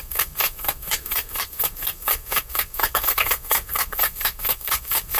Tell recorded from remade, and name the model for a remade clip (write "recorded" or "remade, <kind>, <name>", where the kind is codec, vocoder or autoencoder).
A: remade, codec, SNAC